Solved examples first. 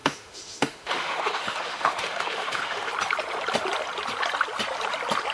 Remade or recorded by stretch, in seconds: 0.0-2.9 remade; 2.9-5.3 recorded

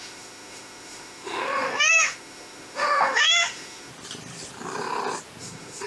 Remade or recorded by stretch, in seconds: 0.0-3.9 remade; 3.9-5.4 recorded; 5.4-5.9 remade

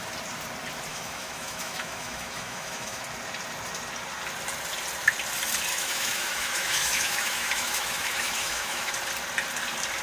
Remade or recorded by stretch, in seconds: 0.0-0.9 recorded; 0.9-3.0 remade; 3.0-5.7 recorded; 5.7-8.9 remade; 8.9-10.0 recorded

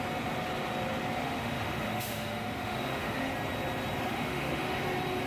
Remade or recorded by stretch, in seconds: 0.0-1.2 recorded; 1.2-3.3 remade; 3.3-4.1 recorded; 4.1-4.8 remade; 4.8-5.3 recorded

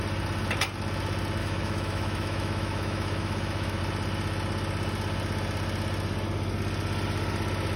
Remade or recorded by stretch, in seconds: 0.0-1.4 recorded; 1.4-3.8 remade; 3.8-7.8 recorded

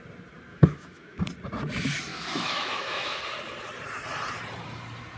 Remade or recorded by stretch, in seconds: 0.0-0.5 recorded; 0.5-1.2 remade; 1.2-2.1 recorded; 2.1-3.2 remade; 3.2-5.2 recorded